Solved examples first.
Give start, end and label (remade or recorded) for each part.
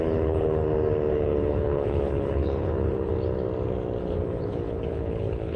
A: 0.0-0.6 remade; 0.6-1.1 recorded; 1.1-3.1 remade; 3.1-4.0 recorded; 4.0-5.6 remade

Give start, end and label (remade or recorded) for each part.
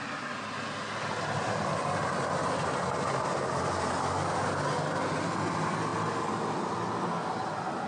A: 0.0-7.9 recorded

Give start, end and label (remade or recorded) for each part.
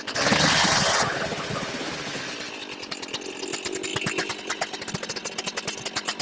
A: 0.0-6.2 recorded